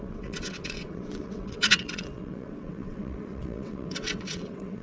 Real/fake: fake